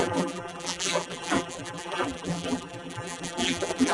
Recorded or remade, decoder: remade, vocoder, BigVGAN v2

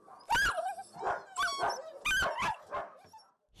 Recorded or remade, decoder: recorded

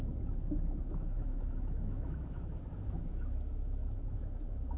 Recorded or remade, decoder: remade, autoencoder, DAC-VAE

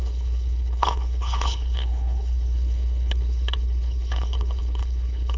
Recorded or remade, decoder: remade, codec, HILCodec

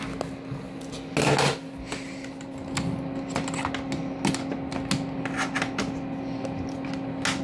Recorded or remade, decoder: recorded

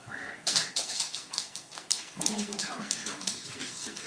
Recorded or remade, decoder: remade, codec, SNAC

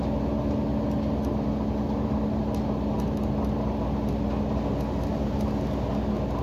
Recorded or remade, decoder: recorded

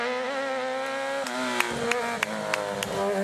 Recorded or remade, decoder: recorded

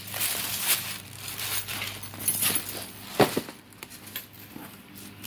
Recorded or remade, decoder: recorded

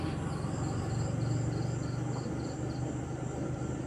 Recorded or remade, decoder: recorded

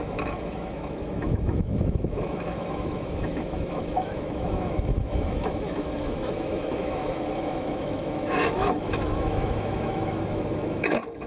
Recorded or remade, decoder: remade, autoencoder, DAC-VAE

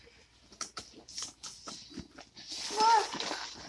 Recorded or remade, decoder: recorded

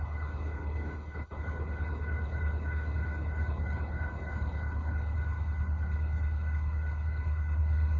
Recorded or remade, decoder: remade, codec, HILCodec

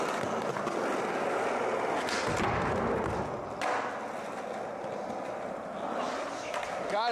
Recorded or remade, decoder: recorded